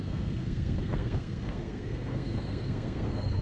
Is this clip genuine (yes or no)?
no